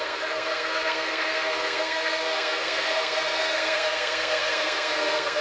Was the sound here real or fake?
fake